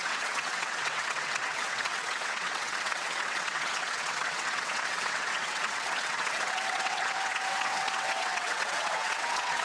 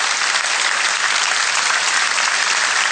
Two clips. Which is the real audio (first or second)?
second